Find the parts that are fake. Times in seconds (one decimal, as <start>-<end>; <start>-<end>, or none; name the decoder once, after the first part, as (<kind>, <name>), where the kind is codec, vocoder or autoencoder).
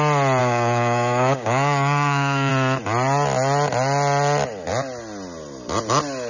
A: 0.4-2.5 (codec, DAC)